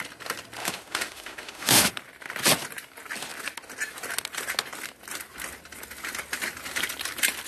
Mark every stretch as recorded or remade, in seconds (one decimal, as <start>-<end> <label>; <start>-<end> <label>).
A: 0.0-0.6 recorded; 0.6-1.9 remade; 1.9-7.5 recorded